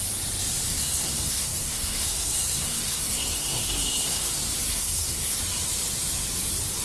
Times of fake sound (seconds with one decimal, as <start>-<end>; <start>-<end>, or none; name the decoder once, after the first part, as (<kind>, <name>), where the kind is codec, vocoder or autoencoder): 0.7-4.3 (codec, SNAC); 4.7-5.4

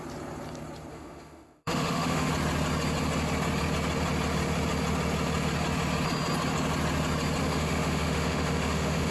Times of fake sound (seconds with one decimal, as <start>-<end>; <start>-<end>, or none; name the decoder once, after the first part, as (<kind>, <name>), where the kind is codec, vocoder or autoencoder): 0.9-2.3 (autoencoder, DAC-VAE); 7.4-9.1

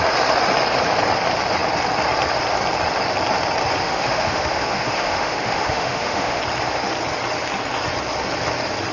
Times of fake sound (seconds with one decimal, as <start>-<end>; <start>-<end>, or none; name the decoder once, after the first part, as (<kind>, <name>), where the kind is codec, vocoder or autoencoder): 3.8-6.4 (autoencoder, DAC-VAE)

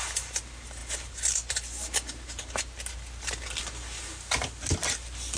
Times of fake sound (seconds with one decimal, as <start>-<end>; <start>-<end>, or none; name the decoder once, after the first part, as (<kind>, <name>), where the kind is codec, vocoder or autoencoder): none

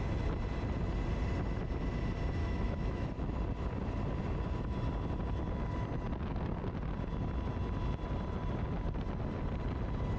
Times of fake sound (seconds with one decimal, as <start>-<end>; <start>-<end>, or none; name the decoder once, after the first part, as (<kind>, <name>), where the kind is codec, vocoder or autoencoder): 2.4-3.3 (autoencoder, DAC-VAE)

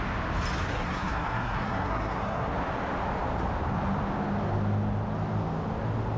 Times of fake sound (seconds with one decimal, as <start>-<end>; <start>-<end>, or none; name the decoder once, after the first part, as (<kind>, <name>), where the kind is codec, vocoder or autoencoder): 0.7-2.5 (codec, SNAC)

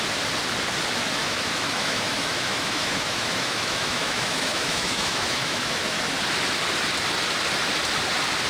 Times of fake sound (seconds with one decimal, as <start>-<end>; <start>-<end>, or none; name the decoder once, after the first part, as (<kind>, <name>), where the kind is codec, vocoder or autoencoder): 1.2-6.0 (autoencoder, DAC-VAE)